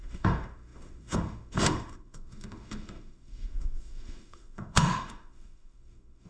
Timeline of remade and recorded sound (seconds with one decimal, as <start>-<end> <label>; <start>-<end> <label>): 0.0-6.3 remade